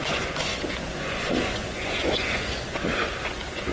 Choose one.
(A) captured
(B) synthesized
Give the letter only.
B